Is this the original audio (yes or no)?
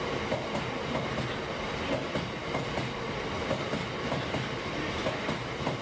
yes